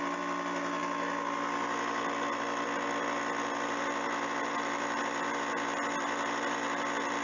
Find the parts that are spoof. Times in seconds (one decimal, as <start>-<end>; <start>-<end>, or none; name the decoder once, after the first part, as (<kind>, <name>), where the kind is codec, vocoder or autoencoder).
none